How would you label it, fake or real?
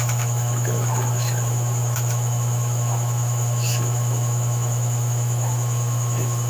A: fake